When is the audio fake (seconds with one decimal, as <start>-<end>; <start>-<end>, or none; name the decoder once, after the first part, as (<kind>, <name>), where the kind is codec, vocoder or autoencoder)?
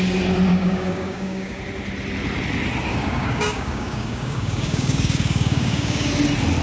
0.5-1.6 (codec, DAC); 2.9-6.1